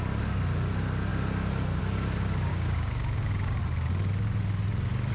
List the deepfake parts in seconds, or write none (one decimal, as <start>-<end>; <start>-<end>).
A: 2.5-3.6